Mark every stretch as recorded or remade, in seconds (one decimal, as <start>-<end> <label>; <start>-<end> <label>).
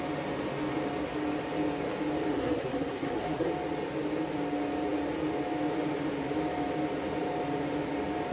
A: 0.0-2.3 recorded; 2.3-3.5 remade; 3.5-8.3 recorded